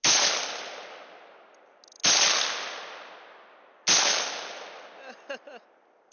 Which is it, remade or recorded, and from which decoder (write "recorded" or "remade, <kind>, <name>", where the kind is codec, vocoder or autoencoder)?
recorded